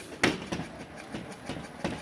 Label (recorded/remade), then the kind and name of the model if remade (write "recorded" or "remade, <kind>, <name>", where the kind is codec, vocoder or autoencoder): recorded